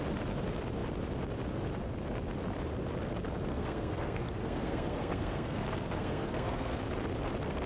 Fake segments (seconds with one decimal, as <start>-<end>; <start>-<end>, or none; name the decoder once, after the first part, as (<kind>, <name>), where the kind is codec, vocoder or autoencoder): 3.5-6.8 (codec, SNAC)